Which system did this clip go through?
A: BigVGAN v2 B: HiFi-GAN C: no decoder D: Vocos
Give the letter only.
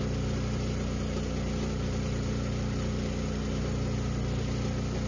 C